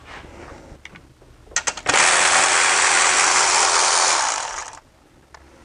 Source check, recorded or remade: recorded